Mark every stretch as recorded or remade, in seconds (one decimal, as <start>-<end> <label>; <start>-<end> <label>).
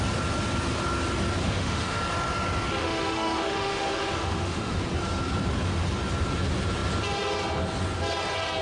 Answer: 0.0-1.4 recorded; 1.4-2.0 remade; 2.0-2.8 recorded; 2.8-4.8 remade; 4.8-8.6 recorded